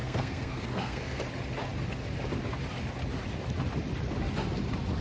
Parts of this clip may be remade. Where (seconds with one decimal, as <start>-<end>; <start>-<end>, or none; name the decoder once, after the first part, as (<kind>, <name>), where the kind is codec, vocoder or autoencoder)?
0.0-1.2 (codec, SNAC)